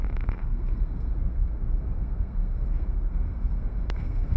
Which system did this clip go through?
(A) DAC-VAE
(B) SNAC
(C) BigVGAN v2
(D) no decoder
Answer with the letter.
B